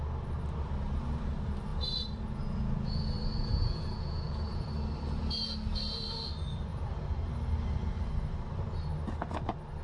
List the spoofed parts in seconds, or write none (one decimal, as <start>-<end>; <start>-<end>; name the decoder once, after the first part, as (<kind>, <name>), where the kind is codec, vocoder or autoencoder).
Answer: 1.7-4.7 (vocoder, Vocos); 6.7-7.3